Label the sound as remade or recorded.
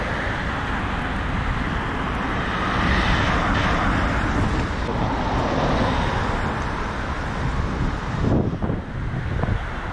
recorded